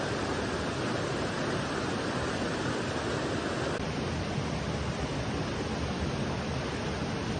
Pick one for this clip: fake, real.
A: real